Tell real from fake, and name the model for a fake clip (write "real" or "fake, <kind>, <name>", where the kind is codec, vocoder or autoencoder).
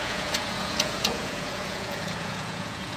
fake, vocoder, Vocos